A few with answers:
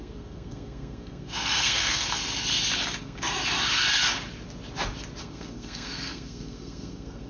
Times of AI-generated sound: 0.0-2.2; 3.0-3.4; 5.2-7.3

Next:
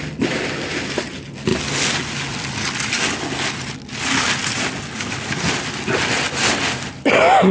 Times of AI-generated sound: none

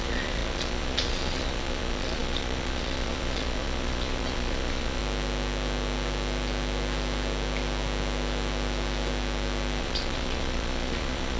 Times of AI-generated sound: 0.0-5.0; 9.8-11.4

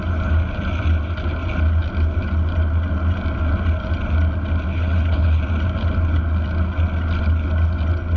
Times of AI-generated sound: 4.7-5.4

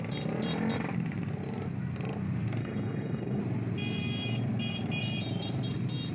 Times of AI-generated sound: 2.6-3.4

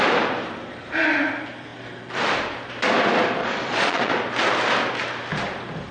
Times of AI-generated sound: 3.4-4.2

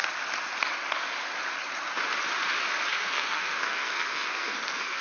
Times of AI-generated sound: 2.9-5.0

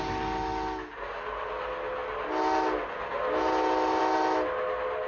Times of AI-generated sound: none